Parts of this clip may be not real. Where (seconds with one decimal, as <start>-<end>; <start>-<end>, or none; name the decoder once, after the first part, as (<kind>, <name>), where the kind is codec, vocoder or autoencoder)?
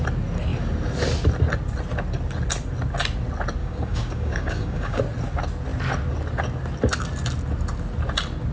3.6-5.0 (codec, DAC)